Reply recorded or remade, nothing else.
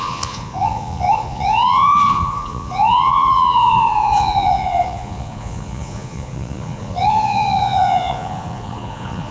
remade